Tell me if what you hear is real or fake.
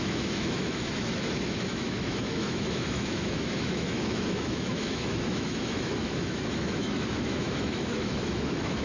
fake